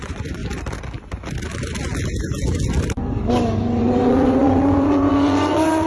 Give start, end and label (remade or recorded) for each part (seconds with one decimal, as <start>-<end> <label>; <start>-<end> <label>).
0.0-0.4 remade; 0.4-3.8 recorded; 3.8-5.9 remade